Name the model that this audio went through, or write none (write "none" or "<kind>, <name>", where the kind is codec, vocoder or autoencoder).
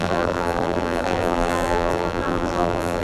vocoder, BigVGAN v2